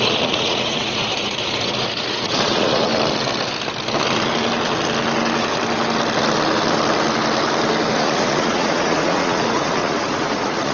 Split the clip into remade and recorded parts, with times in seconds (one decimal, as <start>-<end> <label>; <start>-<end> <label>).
0.0-2.9 remade; 2.9-7.9 recorded; 7.9-10.7 remade